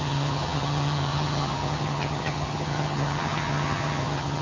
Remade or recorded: remade